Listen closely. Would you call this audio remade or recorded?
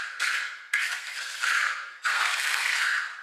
remade